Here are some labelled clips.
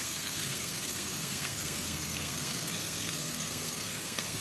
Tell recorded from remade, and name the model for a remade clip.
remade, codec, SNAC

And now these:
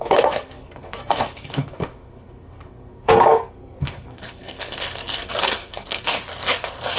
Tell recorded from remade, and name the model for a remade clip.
remade, codec, SNAC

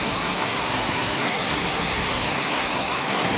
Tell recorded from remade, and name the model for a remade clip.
remade, codec, SNAC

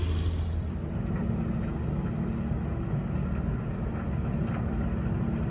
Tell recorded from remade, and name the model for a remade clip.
recorded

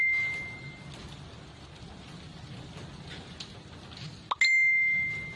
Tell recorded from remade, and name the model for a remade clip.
recorded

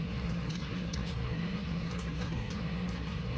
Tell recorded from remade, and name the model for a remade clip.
remade, codec, SNAC